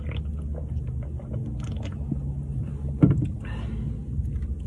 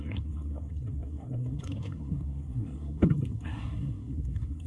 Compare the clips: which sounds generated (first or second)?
second